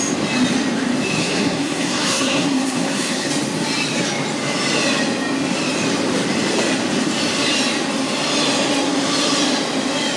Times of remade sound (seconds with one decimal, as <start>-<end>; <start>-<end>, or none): 1.2-3.3